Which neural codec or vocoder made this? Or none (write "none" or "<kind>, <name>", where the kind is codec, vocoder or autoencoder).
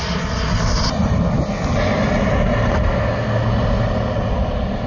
none